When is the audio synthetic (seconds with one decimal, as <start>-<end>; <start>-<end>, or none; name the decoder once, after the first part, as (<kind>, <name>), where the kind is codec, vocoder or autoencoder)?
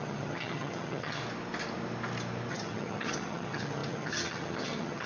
0.0-1.2 (vocoder, HiFi-GAN); 2.5-5.1